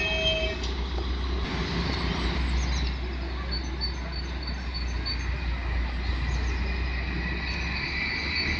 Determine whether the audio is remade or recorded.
recorded